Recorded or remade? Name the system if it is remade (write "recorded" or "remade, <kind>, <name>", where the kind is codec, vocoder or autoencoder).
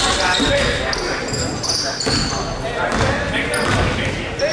recorded